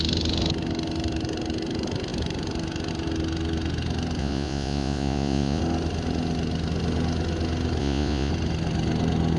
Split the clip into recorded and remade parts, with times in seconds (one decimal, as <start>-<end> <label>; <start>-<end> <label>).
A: 0.0-4.2 recorded; 4.2-5.6 remade; 5.6-7.8 recorded; 7.8-8.3 remade; 8.3-9.4 recorded